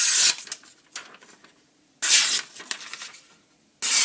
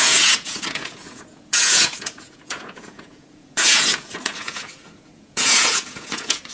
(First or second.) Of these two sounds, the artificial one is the second